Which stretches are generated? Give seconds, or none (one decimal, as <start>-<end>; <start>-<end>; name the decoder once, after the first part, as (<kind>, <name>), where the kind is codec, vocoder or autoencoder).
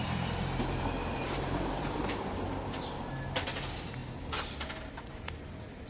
0.0-4.0 (vocoder, BigVGAN v2); 5.0-5.9